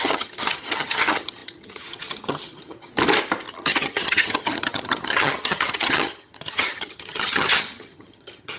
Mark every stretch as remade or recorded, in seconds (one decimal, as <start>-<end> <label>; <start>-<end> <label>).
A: 0.0-2.9 remade; 2.9-3.5 recorded; 3.5-8.6 remade